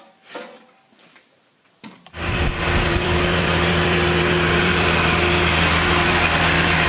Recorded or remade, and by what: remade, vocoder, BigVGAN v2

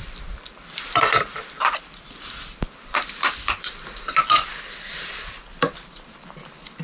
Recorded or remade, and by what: remade, vocoder, BigVGAN v2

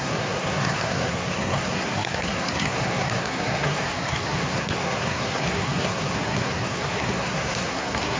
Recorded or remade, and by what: remade, codec, SNAC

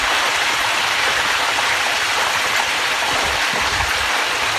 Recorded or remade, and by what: recorded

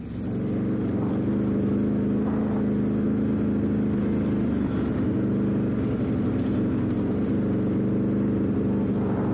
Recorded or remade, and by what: recorded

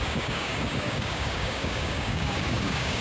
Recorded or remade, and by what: remade, codec, DAC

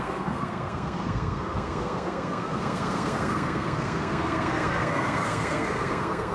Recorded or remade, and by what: remade, codec, SNAC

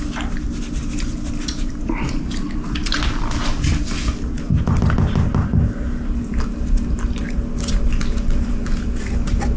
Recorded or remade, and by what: recorded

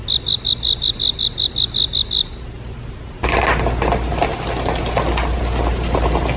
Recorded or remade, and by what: recorded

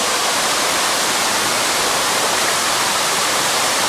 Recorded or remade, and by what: remade, vocoder, BigVGAN v2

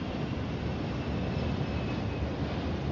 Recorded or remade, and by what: recorded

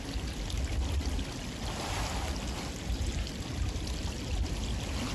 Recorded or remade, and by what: recorded